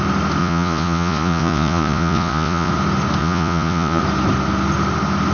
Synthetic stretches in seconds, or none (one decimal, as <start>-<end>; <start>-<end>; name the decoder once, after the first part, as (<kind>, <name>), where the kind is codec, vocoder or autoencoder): 0.4-2.7 (vocoder, Vocos); 3.2-4.0